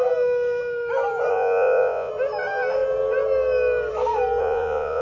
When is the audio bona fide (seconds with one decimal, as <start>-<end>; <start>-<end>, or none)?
0.0-1.3; 2.1-4.4